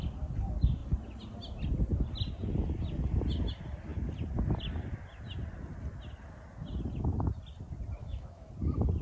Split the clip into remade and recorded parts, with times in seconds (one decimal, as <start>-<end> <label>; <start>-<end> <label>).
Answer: 0.0-8.0 recorded; 8.0-8.5 remade; 8.5-9.0 recorded